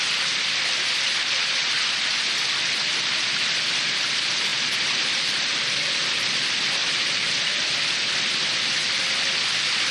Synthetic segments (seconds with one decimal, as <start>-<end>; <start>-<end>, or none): 4.5-5.9; 6.8-7.5